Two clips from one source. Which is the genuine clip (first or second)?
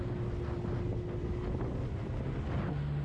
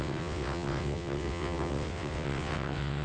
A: first